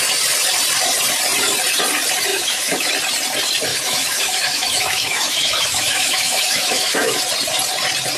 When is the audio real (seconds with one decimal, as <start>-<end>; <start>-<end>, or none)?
0.0-2.3; 2.9-3.7; 7.2-8.2